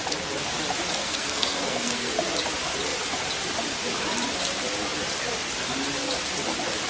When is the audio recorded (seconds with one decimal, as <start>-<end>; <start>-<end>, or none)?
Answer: 0.0-1.0; 2.1-6.9